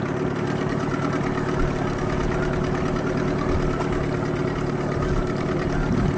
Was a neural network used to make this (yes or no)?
no